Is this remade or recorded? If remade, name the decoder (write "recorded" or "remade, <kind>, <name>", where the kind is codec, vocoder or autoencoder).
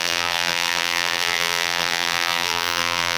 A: remade, vocoder, BigVGAN v2